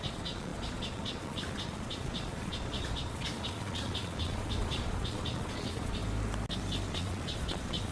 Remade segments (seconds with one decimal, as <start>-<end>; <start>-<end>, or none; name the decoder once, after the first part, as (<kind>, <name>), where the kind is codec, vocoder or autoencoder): 0.0-6.0 (vocoder, Vocos); 6.9-7.9